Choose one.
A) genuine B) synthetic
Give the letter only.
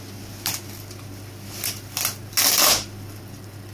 A